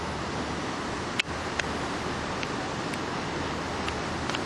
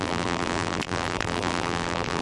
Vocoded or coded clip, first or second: second